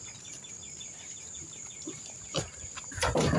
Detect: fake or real fake